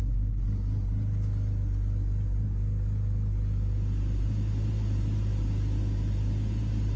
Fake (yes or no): no